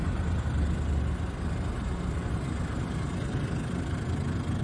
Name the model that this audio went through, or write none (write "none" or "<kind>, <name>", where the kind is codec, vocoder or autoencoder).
none